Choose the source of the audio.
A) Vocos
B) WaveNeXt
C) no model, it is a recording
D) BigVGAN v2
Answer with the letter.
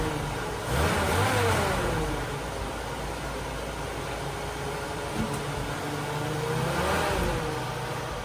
C